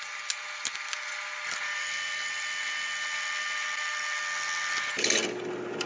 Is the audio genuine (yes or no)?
yes